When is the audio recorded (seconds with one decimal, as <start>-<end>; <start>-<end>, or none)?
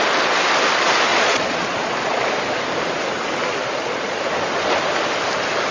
0.0-1.1; 2.2-3.6; 4.2-5.7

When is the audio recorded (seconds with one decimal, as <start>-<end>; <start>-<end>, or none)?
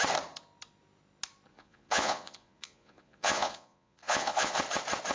0.0-1.5; 4.6-5.1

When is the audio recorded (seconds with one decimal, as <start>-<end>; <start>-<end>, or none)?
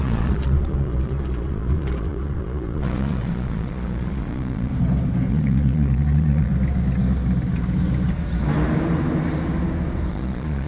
4.7-5.3; 6.5-10.1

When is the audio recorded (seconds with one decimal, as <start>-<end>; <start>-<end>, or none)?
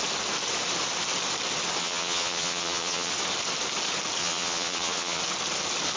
0.0-1.8; 3.1-4.2; 5.2-6.0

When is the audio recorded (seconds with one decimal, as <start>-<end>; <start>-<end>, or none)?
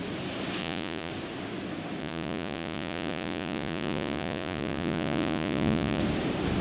0.0-0.6; 1.1-2.0; 6.0-6.6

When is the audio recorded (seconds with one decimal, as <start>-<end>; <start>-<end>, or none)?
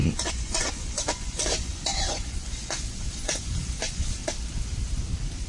4.2-5.5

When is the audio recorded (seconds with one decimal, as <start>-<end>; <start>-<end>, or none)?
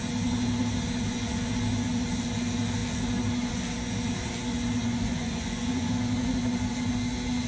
0.0-4.8; 5.9-7.5